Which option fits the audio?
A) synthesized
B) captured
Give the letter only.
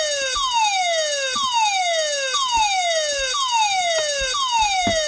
B